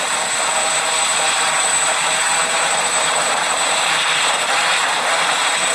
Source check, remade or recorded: remade